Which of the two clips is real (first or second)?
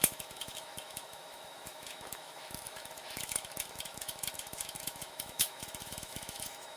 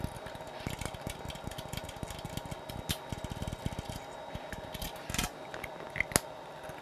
second